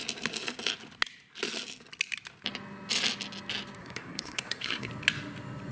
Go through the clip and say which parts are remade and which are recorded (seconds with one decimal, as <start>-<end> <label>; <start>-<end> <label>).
0.0-3.8 recorded; 3.8-4.9 remade; 4.9-5.7 recorded